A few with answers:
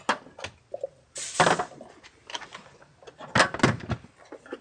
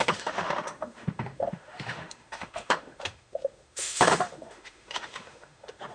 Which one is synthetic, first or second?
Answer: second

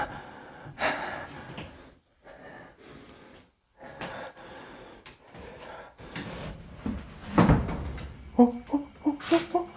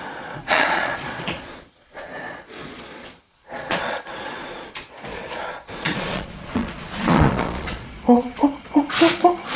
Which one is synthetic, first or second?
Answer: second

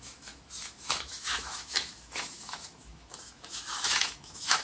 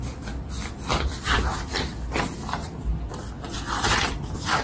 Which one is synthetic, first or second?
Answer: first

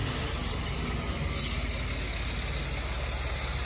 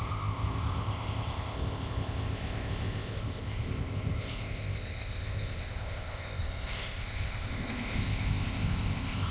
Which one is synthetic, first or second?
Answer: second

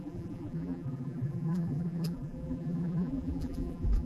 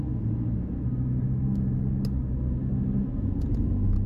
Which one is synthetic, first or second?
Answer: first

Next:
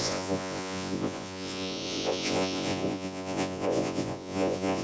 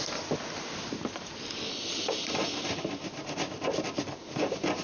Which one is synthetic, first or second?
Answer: first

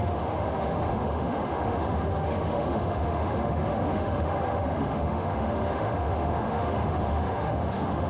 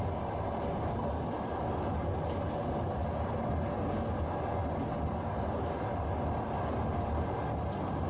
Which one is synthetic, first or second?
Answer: first